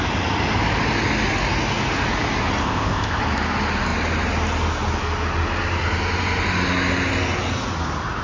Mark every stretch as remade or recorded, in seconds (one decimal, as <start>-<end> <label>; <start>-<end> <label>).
0.0-2.6 recorded; 2.6-3.2 remade; 3.2-8.2 recorded